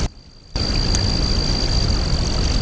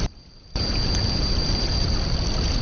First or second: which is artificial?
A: second